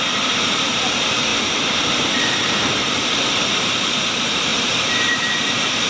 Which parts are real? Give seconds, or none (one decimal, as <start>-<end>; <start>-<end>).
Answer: none